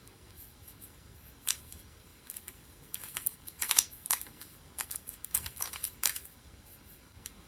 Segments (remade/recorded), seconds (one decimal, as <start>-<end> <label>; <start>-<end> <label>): 0.0-7.5 remade